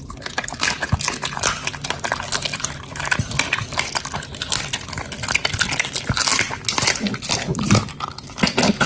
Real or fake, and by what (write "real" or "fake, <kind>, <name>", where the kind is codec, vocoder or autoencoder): real